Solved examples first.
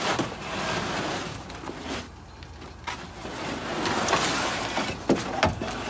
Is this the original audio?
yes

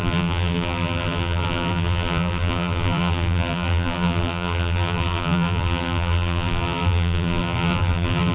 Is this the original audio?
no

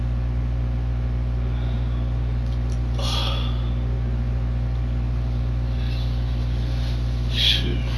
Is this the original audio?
yes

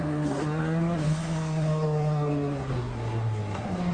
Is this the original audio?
no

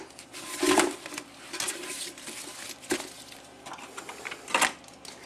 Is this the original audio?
yes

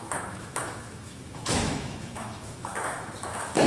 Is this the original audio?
no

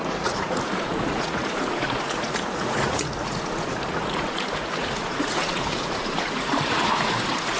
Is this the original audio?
no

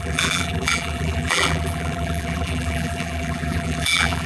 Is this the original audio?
no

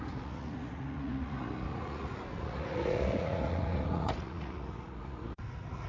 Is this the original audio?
no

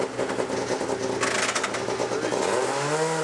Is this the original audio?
yes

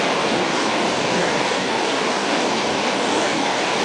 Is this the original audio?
no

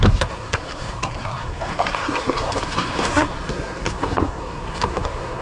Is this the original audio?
no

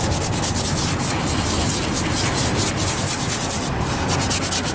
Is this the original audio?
yes